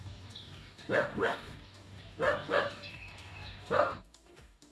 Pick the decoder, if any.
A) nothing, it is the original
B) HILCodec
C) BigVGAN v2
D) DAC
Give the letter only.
D